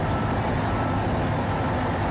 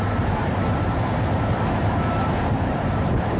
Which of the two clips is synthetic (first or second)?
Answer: second